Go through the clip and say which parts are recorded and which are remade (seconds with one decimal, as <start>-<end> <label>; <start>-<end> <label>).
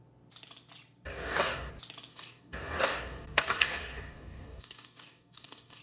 0.0-1.1 recorded; 1.1-1.7 remade; 1.7-2.1 recorded; 2.1-5.8 remade